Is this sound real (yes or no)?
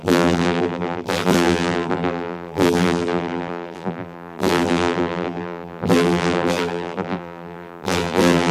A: no